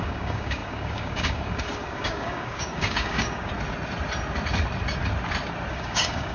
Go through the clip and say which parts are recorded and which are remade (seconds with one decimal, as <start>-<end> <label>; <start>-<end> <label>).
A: 0.0-3.5 remade; 3.5-5.7 recorded; 5.7-6.3 remade